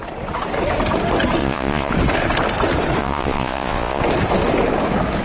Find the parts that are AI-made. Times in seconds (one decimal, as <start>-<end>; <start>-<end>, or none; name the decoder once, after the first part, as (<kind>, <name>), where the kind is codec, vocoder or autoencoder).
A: 1.4-1.9 (vocoder, Vocos); 3.0-4.0